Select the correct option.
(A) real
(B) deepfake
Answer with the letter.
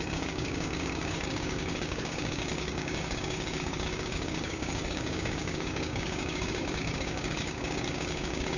B